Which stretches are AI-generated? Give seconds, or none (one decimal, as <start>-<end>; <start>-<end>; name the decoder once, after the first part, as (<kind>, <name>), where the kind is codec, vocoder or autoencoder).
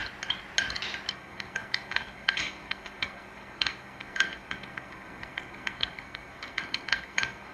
1.1-7.5 (codec, SNAC)